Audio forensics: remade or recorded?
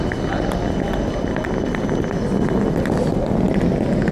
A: recorded